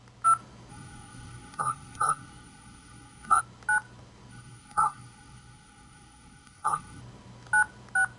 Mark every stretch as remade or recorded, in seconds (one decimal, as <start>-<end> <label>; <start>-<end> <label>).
0.0-0.7 recorded; 0.7-3.4 remade; 3.4-4.3 recorded; 4.3-7.0 remade; 7.0-8.2 recorded

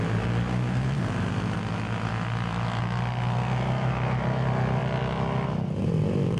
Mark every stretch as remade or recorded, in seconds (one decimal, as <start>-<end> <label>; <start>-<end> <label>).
0.0-6.4 recorded

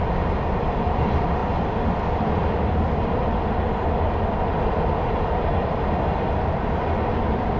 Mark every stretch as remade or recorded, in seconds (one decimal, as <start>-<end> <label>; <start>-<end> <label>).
0.0-7.6 remade

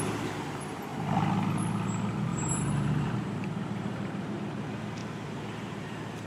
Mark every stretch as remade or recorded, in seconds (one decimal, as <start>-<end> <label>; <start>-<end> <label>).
0.0-2.3 recorded; 2.3-4.4 remade; 4.4-5.0 recorded; 5.0-6.3 remade